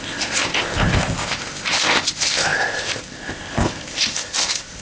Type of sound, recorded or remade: remade